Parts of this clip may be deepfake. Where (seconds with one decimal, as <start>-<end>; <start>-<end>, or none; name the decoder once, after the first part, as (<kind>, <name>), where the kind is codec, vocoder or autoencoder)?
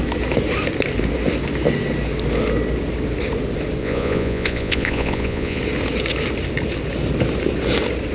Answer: 3.8-5.6 (vocoder, Vocos)